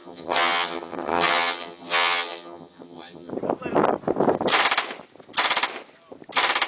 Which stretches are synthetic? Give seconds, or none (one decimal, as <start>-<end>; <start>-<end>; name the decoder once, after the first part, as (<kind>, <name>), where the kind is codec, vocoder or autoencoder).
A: 0.0-3.3 (vocoder, HiFi-GAN)